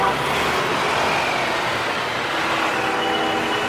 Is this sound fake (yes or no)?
no